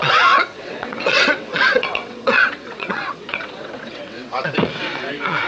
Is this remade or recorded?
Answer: remade